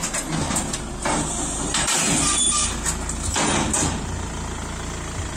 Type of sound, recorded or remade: recorded